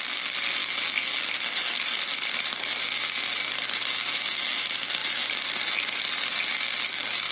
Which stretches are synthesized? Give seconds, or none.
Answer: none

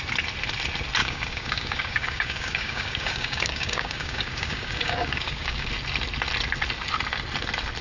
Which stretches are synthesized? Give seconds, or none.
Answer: 1.0-5.7

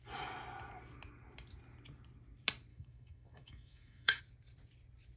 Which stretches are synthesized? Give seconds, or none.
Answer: 2.7-4.2